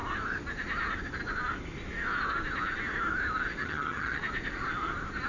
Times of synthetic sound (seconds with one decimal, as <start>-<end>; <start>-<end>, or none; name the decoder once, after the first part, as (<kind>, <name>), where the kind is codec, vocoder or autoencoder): 3.6-4.2 (vocoder, HiFi-GAN)